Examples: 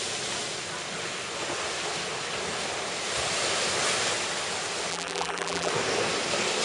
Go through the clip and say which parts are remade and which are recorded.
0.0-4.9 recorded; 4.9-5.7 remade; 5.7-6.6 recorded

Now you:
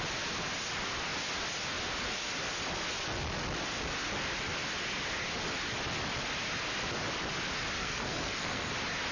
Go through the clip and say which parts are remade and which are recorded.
0.0-7.8 recorded; 7.8-8.7 remade; 8.7-9.1 recorded

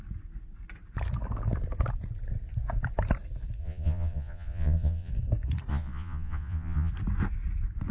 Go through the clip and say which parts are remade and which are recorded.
0.0-3.6 recorded; 3.6-5.1 remade; 5.1-5.7 recorded; 5.7-6.9 remade; 6.9-7.9 recorded

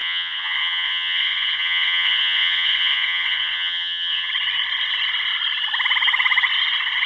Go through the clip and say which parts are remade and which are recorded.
0.0-4.3 remade; 4.3-7.1 recorded

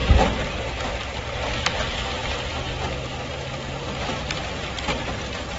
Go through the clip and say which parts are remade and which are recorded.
0.0-1.2 remade; 1.2-5.6 recorded

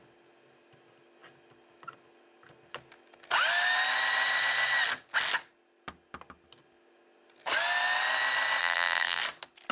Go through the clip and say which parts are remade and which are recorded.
0.0-8.6 recorded; 8.6-9.2 remade; 9.2-9.7 recorded